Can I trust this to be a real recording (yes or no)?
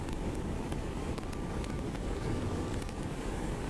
no